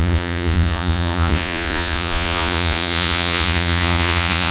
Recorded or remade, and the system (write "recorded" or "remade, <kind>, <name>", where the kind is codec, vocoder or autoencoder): remade, vocoder, Vocos